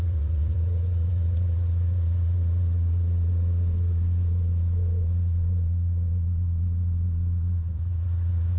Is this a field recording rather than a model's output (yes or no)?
no